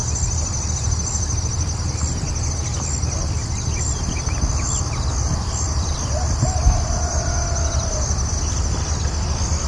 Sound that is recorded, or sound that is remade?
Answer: recorded